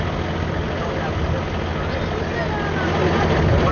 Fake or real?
real